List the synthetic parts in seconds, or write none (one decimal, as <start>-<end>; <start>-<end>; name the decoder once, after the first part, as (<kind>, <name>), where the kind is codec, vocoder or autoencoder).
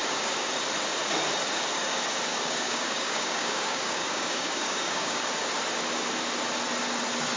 0.0-0.5 (codec, DAC); 2.3-5.3